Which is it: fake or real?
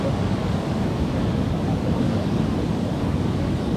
fake